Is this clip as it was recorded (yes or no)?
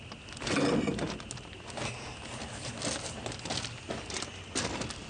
yes